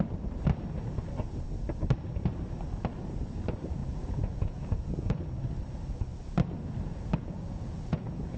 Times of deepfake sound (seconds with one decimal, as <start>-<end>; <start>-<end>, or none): 3.8-5.2; 7.2-8.4